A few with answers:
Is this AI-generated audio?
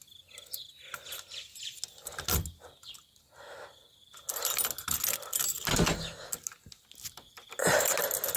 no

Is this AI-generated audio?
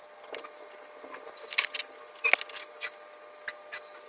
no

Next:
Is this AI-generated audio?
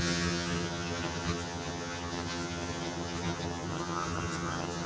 yes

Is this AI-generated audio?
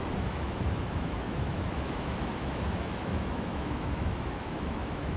yes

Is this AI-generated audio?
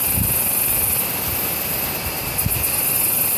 no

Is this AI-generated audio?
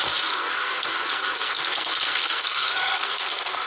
yes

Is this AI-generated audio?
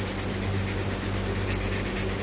no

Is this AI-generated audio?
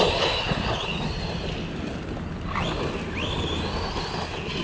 no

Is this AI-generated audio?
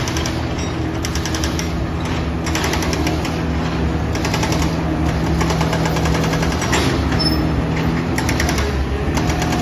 no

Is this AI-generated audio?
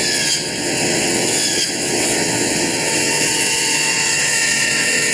yes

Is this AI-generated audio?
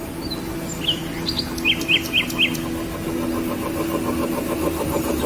no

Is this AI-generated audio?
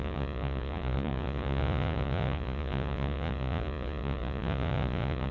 yes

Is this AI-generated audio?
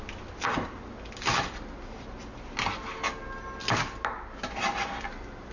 no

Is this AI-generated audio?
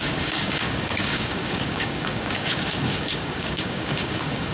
yes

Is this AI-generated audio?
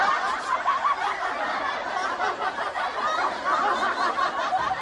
no